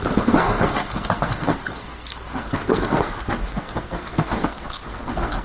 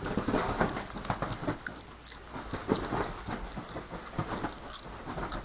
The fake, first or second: first